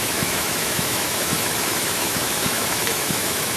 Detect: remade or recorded remade